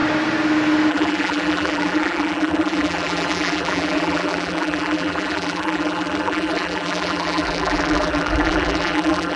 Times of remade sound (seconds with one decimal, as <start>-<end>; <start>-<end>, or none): 0.9-9.4